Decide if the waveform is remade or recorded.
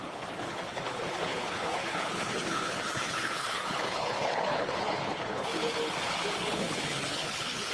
remade